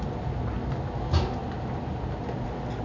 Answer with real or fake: real